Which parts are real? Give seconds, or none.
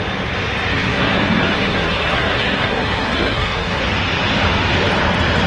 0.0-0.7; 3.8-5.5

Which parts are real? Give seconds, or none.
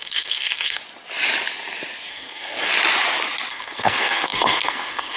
0.8-2.1; 2.7-3.5